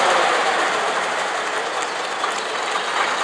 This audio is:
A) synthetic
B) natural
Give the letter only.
B